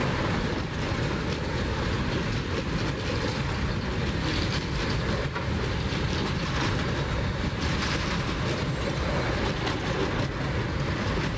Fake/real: real